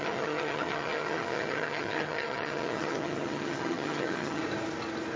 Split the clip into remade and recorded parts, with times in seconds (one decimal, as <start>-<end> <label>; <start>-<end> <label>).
0.0-4.4 remade; 4.4-5.2 recorded